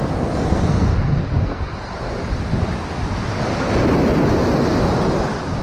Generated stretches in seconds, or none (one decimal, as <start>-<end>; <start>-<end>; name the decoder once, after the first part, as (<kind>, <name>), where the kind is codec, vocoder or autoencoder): 0.0-1.9 (codec, SNAC)